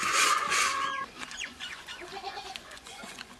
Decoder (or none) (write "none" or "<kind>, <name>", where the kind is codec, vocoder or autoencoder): vocoder, Vocos